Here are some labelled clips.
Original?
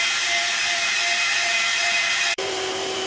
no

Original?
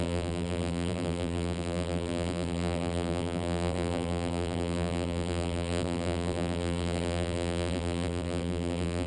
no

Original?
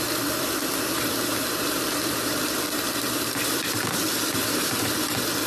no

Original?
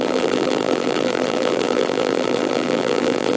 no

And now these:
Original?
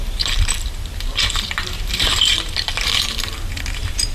no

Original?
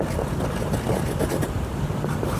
yes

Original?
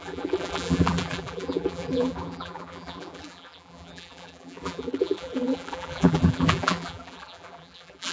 no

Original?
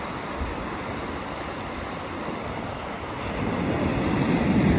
no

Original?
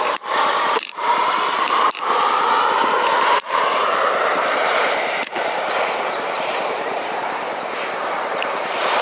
no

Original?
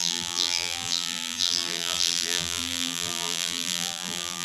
no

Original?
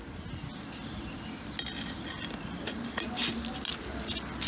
yes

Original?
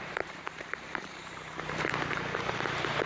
no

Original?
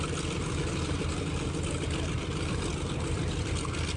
no